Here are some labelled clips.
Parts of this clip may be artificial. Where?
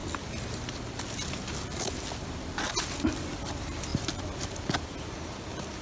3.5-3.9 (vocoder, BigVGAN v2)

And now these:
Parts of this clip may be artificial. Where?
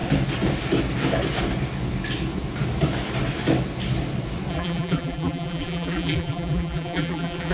4.5-7.5 (vocoder, BigVGAN v2)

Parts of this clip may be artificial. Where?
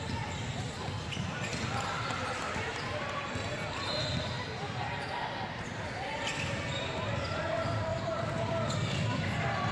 7.9-8.4 (vocoder, BigVGAN v2)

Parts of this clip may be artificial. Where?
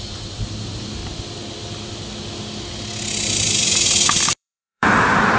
0.0-1.0 (vocoder, BigVGAN v2); 4.2-5.4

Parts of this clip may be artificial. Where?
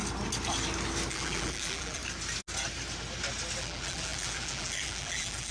1.1-2.0 (vocoder, BigVGAN v2); 3.6-5.5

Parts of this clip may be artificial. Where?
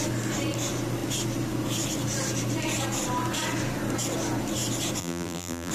5.0-5.7 (vocoder, BigVGAN v2)